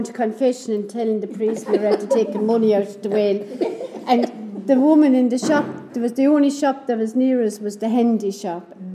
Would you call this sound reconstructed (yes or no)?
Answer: no